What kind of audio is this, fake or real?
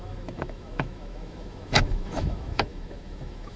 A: fake